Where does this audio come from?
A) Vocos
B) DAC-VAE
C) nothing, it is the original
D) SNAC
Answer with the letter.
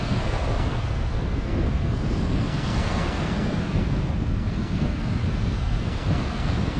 D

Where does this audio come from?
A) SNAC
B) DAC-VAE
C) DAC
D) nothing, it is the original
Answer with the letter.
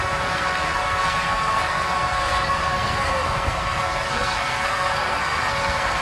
A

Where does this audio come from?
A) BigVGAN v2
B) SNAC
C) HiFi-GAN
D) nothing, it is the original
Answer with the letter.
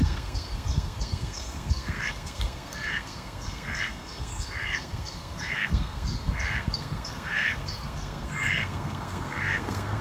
B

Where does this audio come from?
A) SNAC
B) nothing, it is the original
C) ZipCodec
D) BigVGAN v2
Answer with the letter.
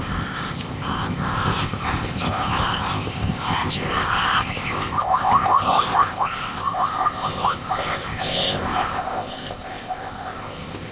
C